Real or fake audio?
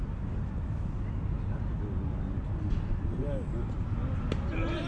real